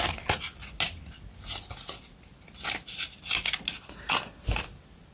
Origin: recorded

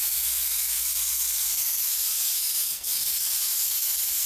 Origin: remade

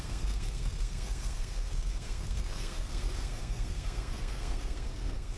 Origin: remade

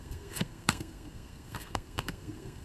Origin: remade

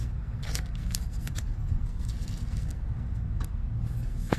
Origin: remade